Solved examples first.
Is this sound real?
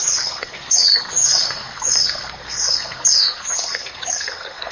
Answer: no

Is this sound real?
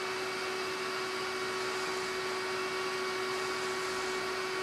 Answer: yes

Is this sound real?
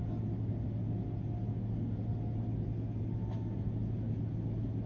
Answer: yes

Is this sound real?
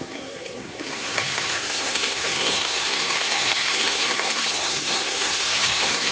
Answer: no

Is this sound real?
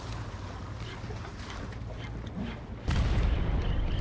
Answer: yes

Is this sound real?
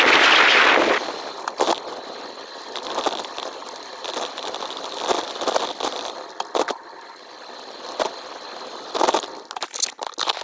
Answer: yes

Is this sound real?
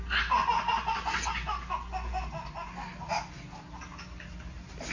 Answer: yes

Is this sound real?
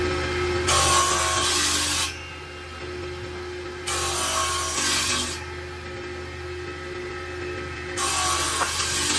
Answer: yes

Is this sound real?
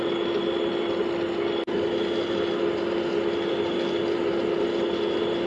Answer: yes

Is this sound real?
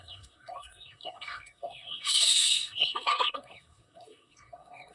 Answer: no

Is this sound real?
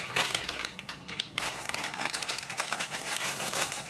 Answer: no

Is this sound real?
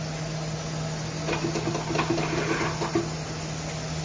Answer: yes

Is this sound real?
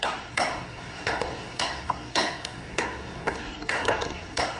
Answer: no